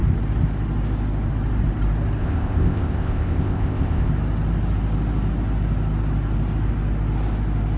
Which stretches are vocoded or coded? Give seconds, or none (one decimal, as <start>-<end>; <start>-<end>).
2.2-4.1